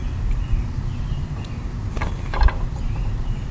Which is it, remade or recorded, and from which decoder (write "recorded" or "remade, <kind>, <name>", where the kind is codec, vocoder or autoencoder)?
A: recorded